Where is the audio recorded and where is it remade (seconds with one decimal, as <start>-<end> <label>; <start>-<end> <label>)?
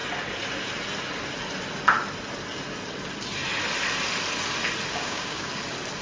0.0-4.9 recorded; 4.9-5.5 remade; 5.5-6.0 recorded